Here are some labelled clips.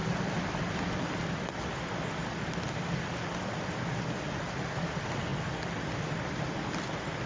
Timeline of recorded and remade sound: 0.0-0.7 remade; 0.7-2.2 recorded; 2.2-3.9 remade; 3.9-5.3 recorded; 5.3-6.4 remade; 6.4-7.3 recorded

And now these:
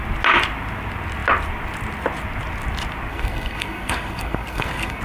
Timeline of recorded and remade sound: 0.0-3.1 recorded; 3.1-5.0 remade

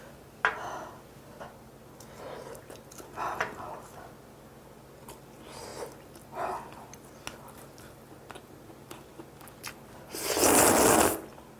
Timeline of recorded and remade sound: 0.0-11.6 recorded

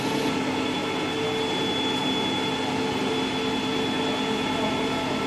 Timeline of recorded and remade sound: 0.0-5.3 recorded